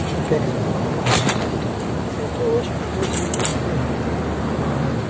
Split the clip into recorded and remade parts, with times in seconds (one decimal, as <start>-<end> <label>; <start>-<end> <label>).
0.0-5.1 recorded